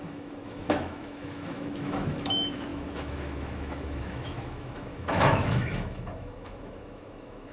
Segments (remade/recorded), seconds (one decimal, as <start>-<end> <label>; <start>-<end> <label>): 0.0-7.5 remade